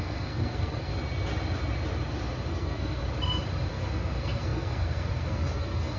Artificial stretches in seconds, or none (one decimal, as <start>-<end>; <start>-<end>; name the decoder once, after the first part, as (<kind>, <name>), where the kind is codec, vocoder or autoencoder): 0.0-0.9 (codec, SNAC); 2.5-3.0; 3.7-6.0